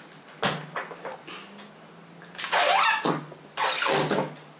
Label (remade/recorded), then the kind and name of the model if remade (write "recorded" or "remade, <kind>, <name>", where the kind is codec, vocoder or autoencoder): recorded